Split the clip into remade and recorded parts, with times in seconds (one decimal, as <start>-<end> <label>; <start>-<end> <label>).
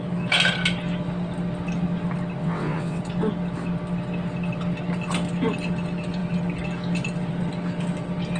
0.0-2.4 recorded; 2.4-3.0 remade; 3.0-8.4 recorded